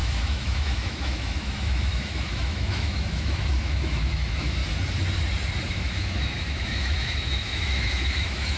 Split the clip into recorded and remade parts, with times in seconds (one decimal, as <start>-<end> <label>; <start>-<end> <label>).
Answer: 0.0-4.6 remade; 4.6-5.7 recorded; 5.7-8.6 remade